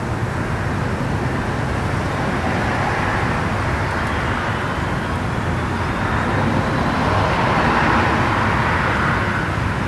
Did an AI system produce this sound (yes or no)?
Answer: no